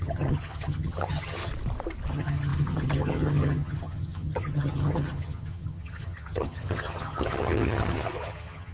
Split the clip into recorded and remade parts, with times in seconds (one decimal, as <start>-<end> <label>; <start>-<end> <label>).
0.0-1.5 remade; 1.5-2.1 recorded; 2.1-8.7 remade